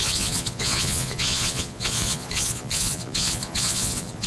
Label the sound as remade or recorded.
remade